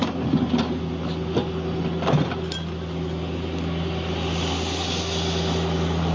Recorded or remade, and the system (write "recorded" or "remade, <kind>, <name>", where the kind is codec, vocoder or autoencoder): recorded